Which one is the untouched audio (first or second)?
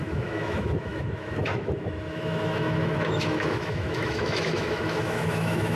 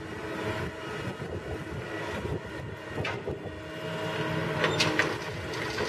second